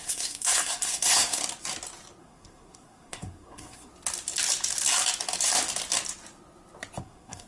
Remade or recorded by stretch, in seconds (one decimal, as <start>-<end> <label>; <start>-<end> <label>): 0.0-1.4 remade; 1.4-2.2 recorded; 2.2-3.9 remade; 3.9-7.0 recorded; 7.0-7.5 remade